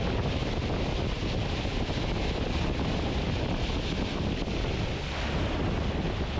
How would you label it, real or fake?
real